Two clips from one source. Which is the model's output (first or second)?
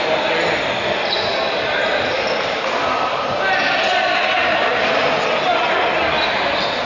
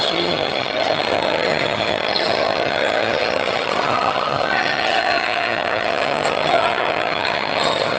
second